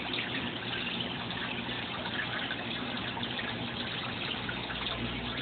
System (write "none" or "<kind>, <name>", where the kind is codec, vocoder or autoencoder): vocoder, BigVGAN v2